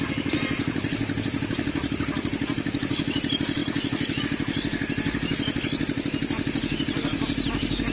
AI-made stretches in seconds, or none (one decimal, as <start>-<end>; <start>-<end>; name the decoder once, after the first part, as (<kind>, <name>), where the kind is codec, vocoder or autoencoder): none